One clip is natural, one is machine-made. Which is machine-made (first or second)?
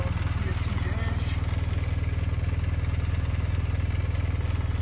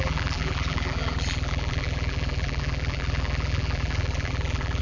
second